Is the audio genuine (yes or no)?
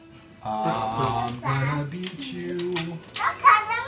yes